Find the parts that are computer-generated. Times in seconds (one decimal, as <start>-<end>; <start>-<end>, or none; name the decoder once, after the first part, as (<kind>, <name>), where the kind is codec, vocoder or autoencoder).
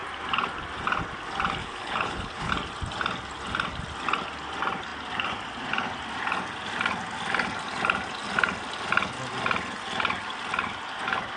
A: 1.6-2.5 (codec, HILCodec)